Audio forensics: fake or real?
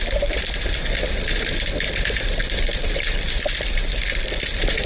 real